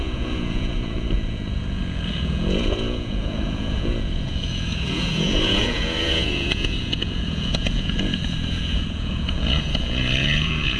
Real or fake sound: fake